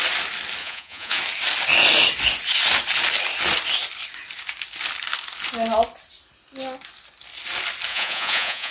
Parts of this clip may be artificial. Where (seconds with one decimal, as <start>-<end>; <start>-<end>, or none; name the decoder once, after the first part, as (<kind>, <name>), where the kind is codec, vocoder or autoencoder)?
0.6-1.2 (vocoder, Vocos); 7.9-8.7